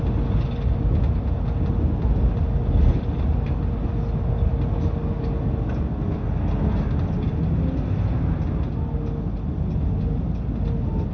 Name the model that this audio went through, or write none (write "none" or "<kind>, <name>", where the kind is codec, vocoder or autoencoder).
none